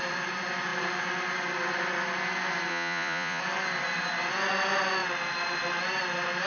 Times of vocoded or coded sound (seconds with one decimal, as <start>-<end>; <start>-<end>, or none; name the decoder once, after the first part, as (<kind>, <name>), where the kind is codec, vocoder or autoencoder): 2.7-3.4 (vocoder, Vocos)